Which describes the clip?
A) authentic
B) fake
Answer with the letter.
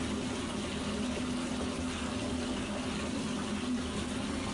A